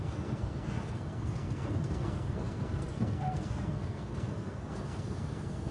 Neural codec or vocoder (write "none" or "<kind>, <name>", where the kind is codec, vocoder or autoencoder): codec, SNAC